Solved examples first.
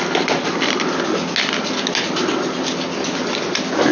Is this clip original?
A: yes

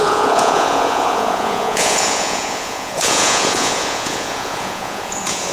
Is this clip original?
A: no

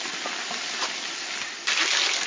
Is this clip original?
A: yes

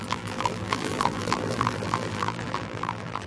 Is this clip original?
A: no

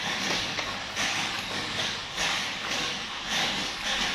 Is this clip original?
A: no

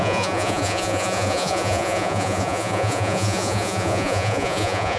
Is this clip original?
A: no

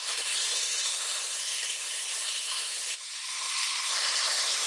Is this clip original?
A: no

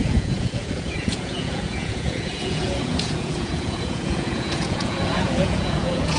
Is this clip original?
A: no